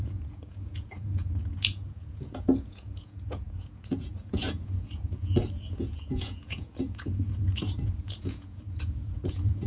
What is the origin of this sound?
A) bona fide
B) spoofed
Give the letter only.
B